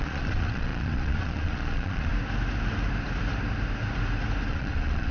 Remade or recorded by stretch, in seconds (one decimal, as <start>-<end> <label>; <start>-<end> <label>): 0.0-2.1 remade; 2.1-4.5 recorded; 4.5-5.1 remade